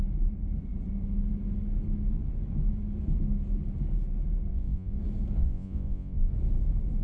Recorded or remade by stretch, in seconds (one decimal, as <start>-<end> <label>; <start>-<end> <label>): 0.0-4.5 recorded; 4.5-5.0 remade; 5.0-5.4 recorded; 5.4-6.3 remade; 6.3-7.0 recorded